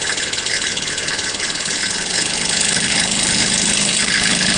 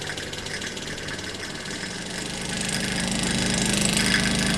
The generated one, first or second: first